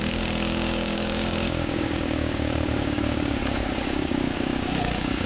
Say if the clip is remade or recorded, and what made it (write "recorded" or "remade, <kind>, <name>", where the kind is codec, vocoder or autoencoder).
remade, codec, DAC